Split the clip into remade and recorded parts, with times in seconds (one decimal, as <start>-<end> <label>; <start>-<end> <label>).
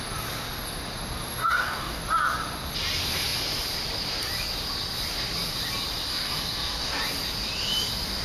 0.0-1.4 recorded; 1.4-2.0 remade; 2.0-6.1 recorded; 6.1-6.9 remade; 6.9-8.2 recorded